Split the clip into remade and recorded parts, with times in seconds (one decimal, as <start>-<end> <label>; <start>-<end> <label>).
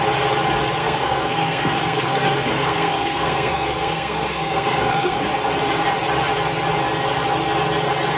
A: 0.0-0.8 recorded; 0.8-5.2 remade; 5.2-8.2 recorded